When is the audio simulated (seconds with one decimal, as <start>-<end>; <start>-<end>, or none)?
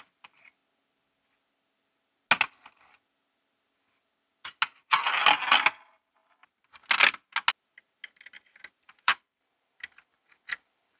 0.0-0.6; 5.8-6.2; 8.7-11.0